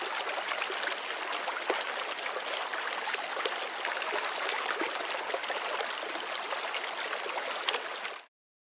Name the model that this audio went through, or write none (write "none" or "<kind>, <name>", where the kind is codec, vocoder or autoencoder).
none